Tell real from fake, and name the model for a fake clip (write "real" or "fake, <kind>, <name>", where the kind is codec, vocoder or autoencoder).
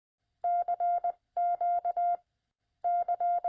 real